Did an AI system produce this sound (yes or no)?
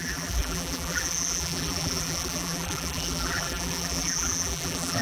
yes